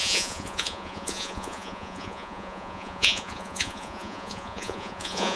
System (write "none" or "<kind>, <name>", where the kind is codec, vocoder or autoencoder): vocoder, Vocos